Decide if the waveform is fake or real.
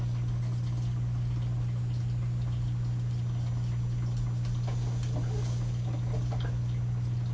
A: real